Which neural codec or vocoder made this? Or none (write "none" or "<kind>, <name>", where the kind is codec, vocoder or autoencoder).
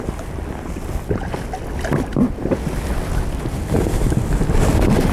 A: none